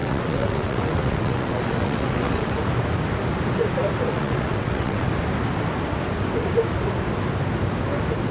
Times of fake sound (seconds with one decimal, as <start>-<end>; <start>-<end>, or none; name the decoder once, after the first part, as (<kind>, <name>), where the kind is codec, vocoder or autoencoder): 0.0-2.5 (vocoder, WaveNeXt); 4.1-5.1